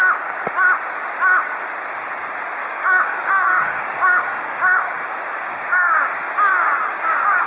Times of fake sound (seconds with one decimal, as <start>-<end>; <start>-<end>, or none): 2.6-5.9; 6.5-7.5